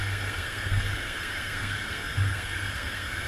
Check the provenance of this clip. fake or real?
fake